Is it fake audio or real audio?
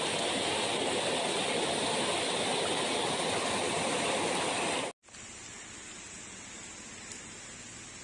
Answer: real